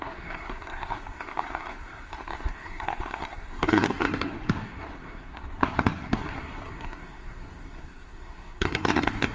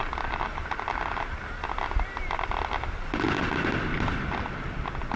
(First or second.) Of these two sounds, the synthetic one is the first